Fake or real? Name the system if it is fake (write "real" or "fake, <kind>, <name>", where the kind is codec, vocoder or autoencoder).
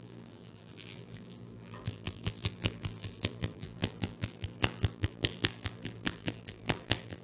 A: fake, vocoder, BigVGAN v2